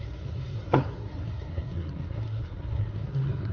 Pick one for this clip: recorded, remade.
remade